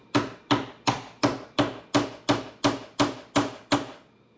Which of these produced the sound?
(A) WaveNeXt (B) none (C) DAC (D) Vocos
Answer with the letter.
B